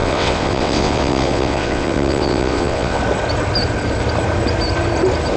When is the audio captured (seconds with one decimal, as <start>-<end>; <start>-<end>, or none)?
3.0-5.4